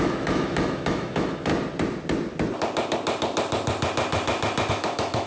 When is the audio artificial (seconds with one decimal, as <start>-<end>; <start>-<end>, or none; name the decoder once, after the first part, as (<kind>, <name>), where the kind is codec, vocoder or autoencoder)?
0.0-1.5 (autoencoder, DAC-VAE); 4.7-5.3